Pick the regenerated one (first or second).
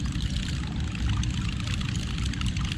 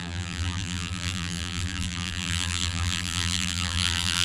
second